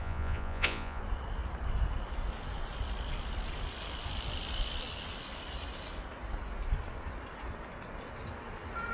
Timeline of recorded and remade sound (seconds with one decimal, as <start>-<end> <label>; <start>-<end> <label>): 0.0-1.0 remade; 1.0-8.9 recorded